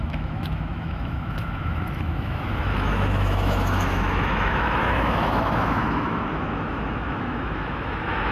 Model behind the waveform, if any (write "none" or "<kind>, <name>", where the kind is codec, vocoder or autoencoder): autoencoder, DAC-VAE